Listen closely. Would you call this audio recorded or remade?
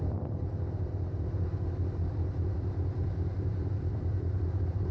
remade